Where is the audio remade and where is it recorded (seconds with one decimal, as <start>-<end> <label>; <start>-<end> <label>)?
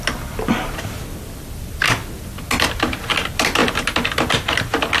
0.0-2.0 remade; 2.0-2.8 recorded; 2.8-5.0 remade